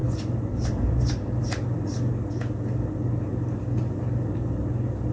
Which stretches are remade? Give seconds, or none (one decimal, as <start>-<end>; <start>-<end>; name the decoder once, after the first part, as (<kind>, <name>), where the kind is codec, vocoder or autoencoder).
none